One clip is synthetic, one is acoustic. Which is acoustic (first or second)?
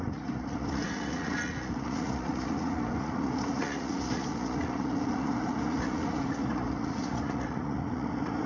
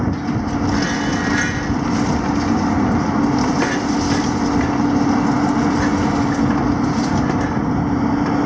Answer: second